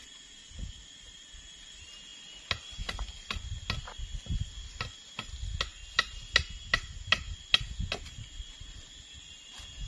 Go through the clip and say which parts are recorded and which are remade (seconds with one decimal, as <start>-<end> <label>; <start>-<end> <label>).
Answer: 0.0-9.9 recorded